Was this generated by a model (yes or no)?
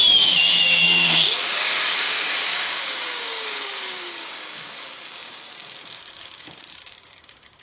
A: yes